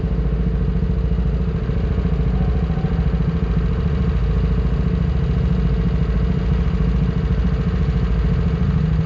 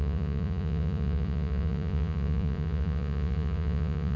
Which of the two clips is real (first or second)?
first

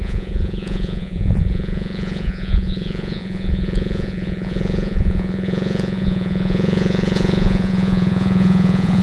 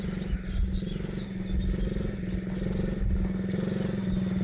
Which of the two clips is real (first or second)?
second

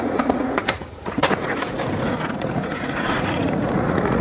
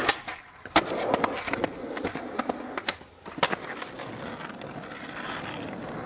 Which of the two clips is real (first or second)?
second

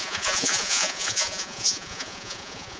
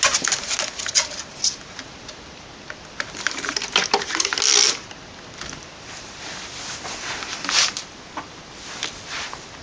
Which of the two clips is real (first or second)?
second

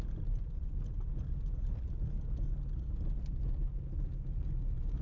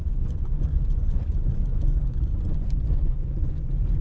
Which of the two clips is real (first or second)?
first